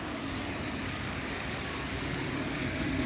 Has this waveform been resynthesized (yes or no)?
yes